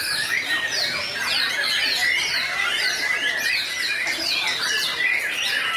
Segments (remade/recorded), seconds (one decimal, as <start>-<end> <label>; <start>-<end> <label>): 0.0-1.5 remade; 1.5-1.9 recorded; 1.9-4.2 remade; 4.2-4.9 recorded; 4.9-5.8 remade